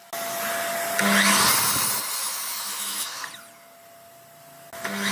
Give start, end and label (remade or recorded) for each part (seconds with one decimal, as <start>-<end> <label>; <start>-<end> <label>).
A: 0.0-2.2 recorded; 2.2-3.2 remade; 3.2-5.1 recorded